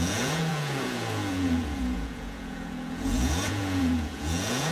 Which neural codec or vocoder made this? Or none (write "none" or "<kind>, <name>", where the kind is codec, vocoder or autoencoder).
vocoder, Vocos